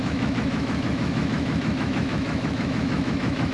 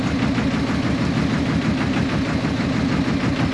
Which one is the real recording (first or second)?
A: second